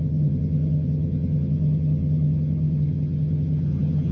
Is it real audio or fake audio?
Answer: fake